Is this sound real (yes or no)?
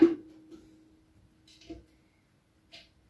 yes